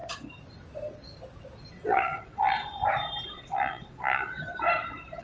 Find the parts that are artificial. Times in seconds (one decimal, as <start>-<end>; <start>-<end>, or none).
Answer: 1.7-2.8; 3.3-4.4